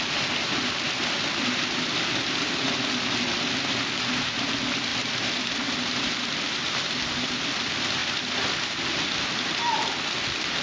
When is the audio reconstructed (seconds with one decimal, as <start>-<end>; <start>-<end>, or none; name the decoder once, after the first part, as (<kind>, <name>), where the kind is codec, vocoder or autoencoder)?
4.9-7.0 (vocoder, BigVGAN v2); 8.0-8.7